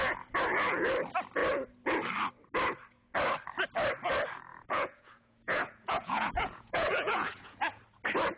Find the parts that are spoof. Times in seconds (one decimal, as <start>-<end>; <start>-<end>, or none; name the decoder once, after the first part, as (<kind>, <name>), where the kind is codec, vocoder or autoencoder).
4.5-7.8 (vocoder, Vocos)